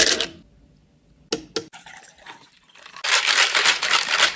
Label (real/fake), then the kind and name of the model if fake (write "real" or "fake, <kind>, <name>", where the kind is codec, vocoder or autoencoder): real